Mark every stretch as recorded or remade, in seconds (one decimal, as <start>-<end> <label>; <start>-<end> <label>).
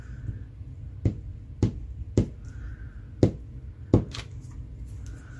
0.0-0.6 recorded; 0.6-2.3 remade; 2.3-5.4 recorded